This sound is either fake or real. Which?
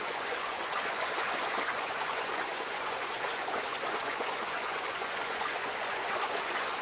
fake